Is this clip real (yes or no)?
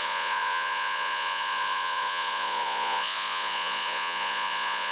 no